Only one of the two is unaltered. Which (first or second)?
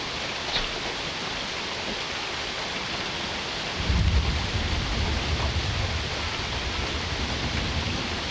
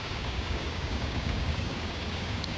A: first